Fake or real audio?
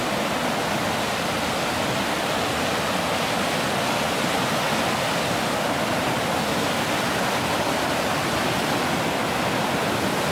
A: real